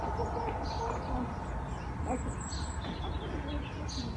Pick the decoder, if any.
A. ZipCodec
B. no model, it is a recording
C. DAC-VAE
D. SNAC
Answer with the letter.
B